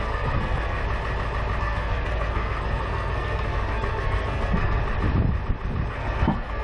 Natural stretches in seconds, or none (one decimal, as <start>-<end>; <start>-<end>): 0.8-1.6; 4.8-5.9